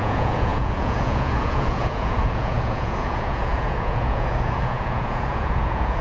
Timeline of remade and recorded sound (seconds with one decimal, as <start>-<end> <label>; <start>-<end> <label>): 0.0-6.0 remade